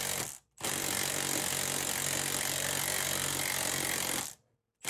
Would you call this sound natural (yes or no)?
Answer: yes